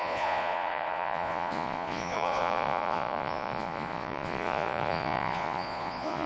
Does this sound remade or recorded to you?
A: remade